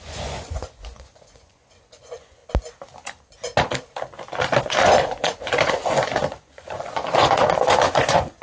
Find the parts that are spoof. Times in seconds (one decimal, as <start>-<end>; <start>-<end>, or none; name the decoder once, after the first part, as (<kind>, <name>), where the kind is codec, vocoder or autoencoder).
0.0-2.4 (vocoder, Vocos); 4.6-8.4